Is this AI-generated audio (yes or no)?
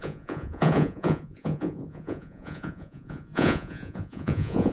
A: yes